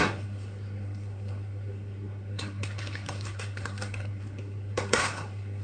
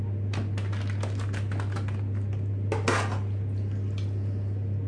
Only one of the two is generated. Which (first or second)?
first